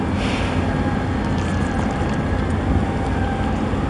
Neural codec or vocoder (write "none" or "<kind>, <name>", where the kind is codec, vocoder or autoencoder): none